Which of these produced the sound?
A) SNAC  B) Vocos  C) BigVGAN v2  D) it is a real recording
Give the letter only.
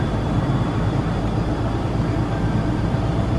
C